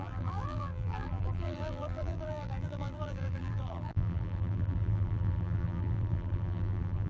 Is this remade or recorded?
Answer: remade